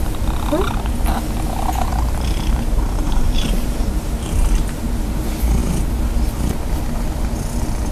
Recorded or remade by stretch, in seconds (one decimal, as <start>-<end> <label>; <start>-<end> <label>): 0.0-1.9 recorded; 1.9-4.9 remade; 4.9-7.9 recorded